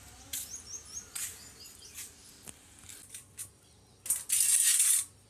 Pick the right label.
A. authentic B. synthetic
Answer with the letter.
A